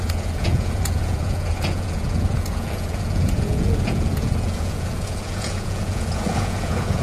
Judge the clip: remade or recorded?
remade